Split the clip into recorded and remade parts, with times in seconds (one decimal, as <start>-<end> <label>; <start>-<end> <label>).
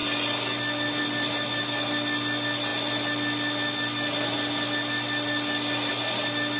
0.0-6.6 recorded